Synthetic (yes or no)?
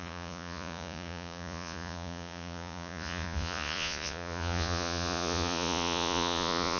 yes